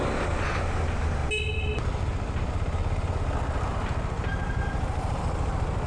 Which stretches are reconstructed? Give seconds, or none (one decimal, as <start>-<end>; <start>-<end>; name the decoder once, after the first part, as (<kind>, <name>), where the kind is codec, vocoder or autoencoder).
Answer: none